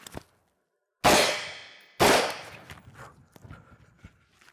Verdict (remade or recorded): recorded